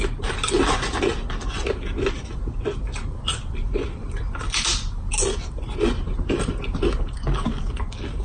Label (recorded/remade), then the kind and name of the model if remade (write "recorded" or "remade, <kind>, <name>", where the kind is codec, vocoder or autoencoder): recorded